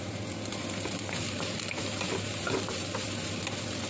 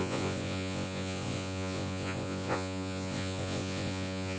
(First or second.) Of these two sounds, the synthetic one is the second